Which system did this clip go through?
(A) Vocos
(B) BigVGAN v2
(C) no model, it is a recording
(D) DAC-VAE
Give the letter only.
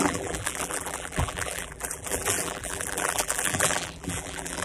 B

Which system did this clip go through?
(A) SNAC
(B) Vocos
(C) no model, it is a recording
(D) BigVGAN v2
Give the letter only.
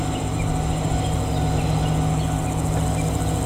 C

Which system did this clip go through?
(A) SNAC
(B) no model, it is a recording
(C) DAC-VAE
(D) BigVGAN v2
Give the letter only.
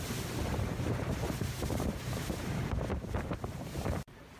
D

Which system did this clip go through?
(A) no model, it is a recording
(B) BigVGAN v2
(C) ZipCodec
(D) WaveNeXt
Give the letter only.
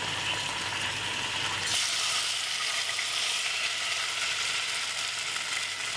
A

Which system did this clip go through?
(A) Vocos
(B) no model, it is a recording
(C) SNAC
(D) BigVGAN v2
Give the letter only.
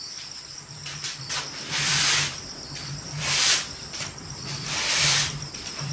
D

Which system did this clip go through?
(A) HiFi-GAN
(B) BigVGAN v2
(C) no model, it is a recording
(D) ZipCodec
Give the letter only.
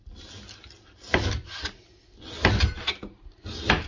C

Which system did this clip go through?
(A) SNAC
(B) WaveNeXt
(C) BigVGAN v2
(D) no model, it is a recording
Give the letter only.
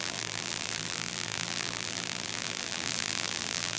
C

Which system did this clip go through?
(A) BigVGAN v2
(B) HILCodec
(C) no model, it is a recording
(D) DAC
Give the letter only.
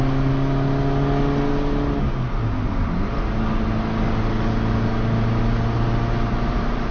C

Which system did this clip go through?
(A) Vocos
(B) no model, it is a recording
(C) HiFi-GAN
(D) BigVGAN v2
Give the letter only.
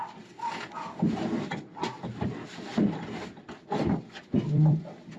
D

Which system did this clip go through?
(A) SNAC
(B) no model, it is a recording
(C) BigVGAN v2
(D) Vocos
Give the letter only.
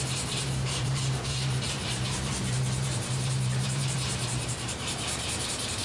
C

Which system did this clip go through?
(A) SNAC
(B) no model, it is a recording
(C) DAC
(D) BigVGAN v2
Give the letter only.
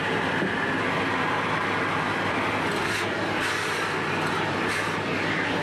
D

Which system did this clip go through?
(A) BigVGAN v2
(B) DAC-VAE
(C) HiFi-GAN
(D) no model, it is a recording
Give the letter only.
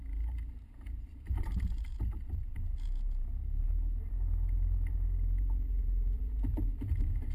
A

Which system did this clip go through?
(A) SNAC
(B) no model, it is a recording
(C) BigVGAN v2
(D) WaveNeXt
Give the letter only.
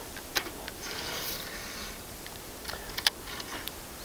C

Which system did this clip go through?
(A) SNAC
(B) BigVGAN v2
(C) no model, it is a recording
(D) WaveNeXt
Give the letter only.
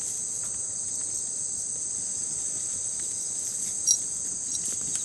C